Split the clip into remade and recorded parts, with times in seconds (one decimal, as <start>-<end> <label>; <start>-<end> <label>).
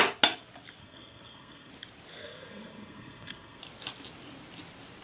0.0-0.8 recorded; 0.8-1.7 remade; 1.7-2.2 recorded; 2.2-3.6 remade; 3.6-5.0 recorded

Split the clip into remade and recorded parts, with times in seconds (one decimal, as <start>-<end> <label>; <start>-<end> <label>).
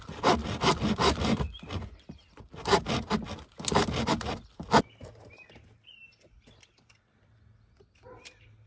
0.0-8.7 recorded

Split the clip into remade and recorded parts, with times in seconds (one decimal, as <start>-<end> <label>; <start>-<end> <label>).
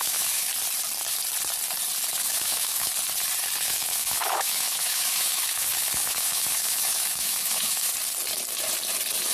0.0-0.5 remade; 0.5-2.2 recorded; 2.2-2.9 remade; 2.9-3.6 recorded; 3.6-7.9 remade; 7.9-9.3 recorded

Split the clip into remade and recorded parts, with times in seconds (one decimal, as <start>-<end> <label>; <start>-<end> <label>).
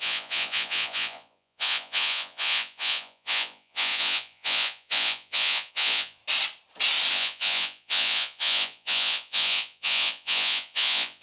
0.0-6.2 remade; 6.2-7.1 recorded; 7.1-11.2 remade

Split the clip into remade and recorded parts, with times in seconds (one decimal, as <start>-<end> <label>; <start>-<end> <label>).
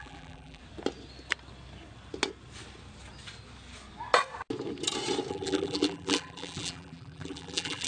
0.0-0.6 remade; 0.6-5.3 recorded; 5.3-7.9 remade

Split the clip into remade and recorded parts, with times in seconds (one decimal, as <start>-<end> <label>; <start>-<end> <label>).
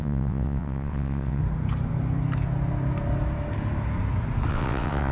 0.0-1.4 remade; 1.4-4.5 recorded; 4.5-5.1 remade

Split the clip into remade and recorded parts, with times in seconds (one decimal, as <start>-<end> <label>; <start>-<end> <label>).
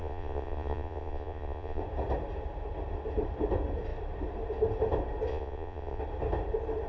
0.0-1.8 remade; 1.8-5.3 recorded; 5.3-6.0 remade; 6.0-6.9 recorded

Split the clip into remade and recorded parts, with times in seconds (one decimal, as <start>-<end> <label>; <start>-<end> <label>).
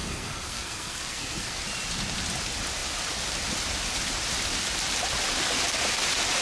0.0-1.6 remade; 1.6-6.4 recorded